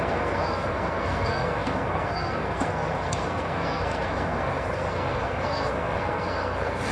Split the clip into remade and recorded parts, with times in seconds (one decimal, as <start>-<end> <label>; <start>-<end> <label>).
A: 0.0-6.9 remade